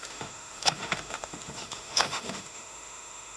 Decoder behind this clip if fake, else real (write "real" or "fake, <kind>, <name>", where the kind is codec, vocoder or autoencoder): fake, autoencoder, DAC-VAE